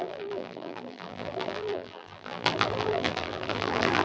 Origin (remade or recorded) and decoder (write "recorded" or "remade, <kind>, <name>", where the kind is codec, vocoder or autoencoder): remade, vocoder, BigVGAN v2